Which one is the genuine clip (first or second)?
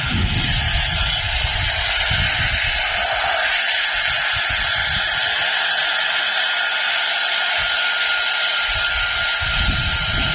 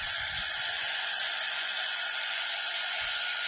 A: first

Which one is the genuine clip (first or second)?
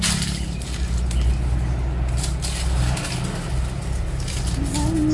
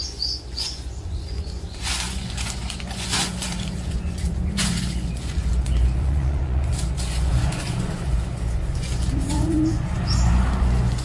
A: first